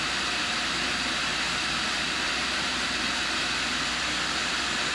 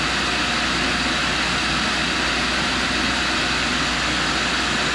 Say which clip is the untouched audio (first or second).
second